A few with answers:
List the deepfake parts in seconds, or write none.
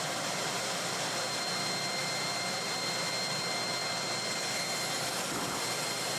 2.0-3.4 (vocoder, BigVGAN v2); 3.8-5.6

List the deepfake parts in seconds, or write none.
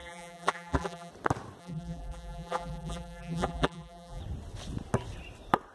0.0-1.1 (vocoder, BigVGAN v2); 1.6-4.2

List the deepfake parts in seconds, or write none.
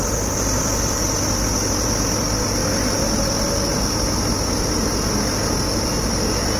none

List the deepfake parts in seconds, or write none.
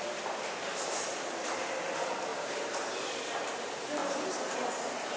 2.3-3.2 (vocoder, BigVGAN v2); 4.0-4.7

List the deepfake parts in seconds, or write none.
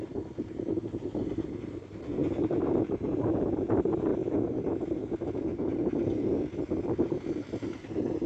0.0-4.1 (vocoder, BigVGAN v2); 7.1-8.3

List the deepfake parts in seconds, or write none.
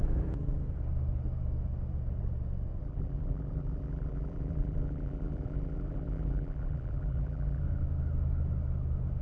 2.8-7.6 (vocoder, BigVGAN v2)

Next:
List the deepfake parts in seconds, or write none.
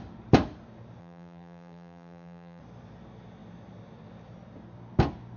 1.0-2.6 (vocoder, BigVGAN v2)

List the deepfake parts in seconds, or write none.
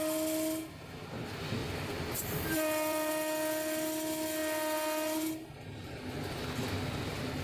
1.6-3.1 (vocoder, BigVGAN v2)